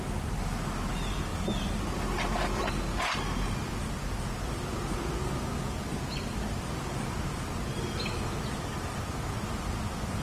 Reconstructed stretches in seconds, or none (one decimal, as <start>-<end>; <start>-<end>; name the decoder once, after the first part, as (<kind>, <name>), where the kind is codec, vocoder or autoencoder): none